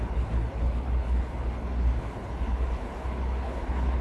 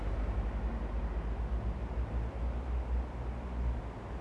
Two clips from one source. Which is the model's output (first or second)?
first